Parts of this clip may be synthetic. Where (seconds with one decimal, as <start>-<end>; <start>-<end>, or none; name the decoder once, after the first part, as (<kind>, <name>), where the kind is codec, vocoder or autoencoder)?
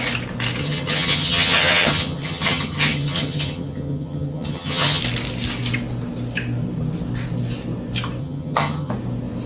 0.6-5.0 (vocoder, HiFi-GAN); 8.2-8.9